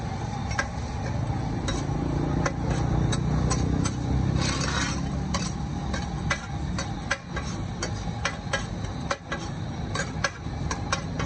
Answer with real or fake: real